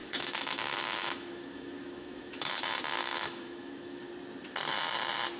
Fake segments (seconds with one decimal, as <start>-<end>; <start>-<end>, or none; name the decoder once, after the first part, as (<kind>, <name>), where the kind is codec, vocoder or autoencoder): 0.0-2.6 (autoencoder, DAC-VAE); 3.0-4.1